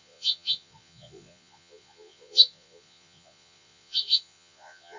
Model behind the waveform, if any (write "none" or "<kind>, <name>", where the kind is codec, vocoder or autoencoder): vocoder, Vocos